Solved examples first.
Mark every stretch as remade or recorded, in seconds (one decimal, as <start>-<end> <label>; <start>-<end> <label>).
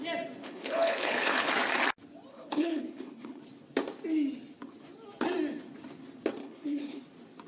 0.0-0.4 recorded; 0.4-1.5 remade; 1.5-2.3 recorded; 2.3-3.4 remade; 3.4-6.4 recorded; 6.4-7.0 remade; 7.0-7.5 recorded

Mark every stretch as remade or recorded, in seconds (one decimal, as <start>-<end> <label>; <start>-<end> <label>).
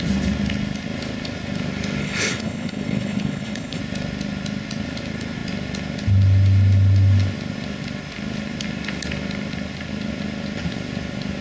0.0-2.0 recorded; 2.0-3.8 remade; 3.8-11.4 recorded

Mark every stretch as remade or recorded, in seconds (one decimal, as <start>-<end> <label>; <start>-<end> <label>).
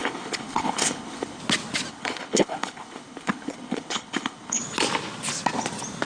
0.0-1.4 remade; 1.4-1.9 recorded; 1.9-4.6 remade; 4.6-6.0 recorded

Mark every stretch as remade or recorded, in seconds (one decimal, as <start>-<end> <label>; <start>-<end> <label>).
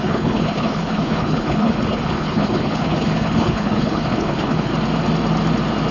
0.0-4.7 remade; 4.7-5.9 recorded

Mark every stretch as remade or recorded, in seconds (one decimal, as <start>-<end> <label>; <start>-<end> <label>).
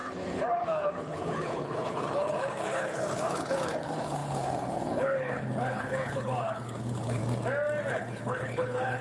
0.0-7.2 remade; 7.2-7.9 recorded; 7.9-9.0 remade